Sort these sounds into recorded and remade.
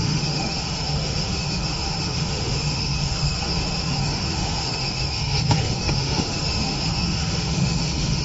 remade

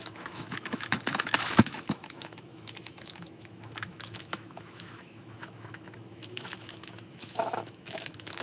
remade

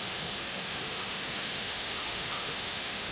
remade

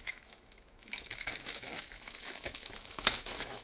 remade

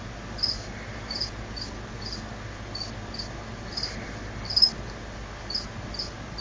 recorded